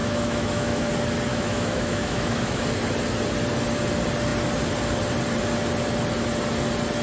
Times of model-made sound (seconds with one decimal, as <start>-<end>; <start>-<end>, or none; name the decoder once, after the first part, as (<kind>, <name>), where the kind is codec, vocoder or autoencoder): 0.0-0.9 (autoencoder, DAC-VAE); 1.3-2.6